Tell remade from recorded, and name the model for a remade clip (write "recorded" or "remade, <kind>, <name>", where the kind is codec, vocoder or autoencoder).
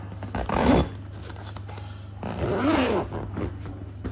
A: recorded